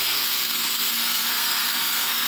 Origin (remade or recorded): remade